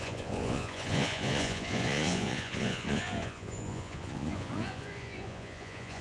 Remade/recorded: remade